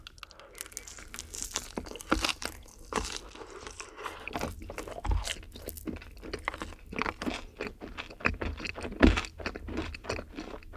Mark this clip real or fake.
real